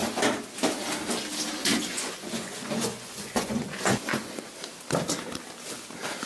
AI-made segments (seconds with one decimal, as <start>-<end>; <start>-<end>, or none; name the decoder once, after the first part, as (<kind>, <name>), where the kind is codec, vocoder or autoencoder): 1.6-4.5 (vocoder, Vocos)